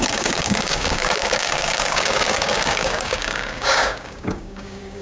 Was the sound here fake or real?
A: fake